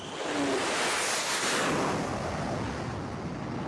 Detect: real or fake real